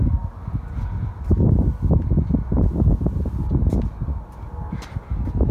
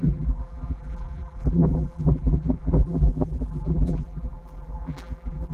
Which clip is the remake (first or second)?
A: second